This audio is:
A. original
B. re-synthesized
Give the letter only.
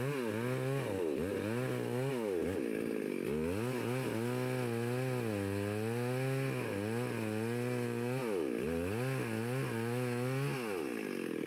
A